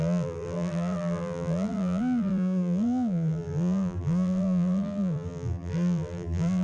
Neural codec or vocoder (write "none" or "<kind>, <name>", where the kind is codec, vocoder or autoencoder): vocoder, BigVGAN v2